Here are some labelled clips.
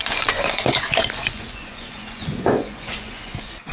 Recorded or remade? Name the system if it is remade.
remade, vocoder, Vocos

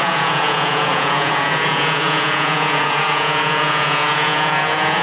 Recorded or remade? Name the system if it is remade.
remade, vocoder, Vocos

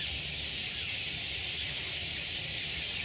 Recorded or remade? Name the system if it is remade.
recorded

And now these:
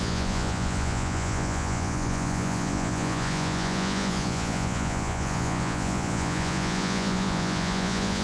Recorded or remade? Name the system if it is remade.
remade, vocoder, Vocos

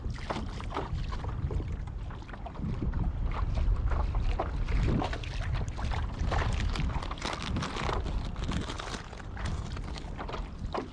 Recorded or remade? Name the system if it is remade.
recorded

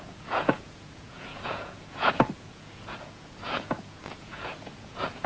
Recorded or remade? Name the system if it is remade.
remade, vocoder, Vocos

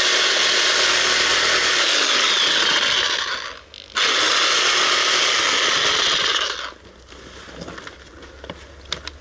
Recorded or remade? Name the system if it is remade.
recorded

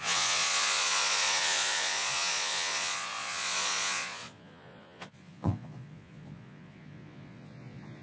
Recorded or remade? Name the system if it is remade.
remade, vocoder, Vocos